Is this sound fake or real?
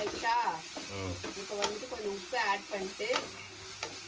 real